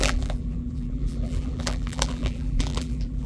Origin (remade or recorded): remade